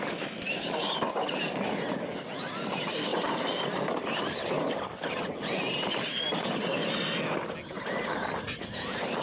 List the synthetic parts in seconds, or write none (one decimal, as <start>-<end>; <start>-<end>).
none